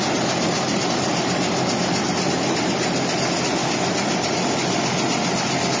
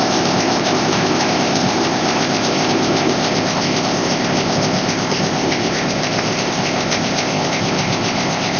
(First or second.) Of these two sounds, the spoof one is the second